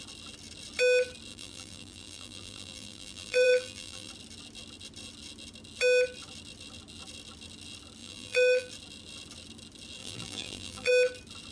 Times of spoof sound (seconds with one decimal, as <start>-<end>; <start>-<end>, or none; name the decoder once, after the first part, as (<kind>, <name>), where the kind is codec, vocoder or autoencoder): 1.3-4.1 (vocoder, BigVGAN v2); 8.0-8.7; 10.0-10.9

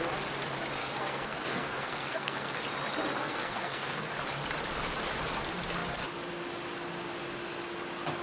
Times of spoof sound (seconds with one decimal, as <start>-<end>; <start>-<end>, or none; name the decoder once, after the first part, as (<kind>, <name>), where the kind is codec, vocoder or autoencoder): 0.8-2.6 (codec, SNAC); 3.2-4.1

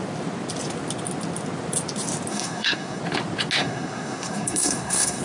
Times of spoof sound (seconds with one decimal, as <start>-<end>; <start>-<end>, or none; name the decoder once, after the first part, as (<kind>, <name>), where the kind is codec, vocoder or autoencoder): 2.3-3.0 (codec, SNAC); 3.6-5.2

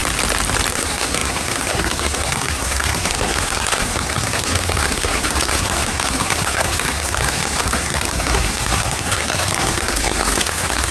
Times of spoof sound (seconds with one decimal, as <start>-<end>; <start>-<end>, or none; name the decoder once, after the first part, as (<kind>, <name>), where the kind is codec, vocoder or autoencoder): 0.7-10.9 (codec, SNAC)

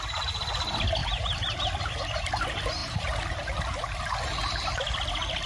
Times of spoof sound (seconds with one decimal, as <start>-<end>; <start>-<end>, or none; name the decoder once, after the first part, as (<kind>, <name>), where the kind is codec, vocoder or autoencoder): 1.0-1.6 (vocoder, BigVGAN v2); 2.8-3.6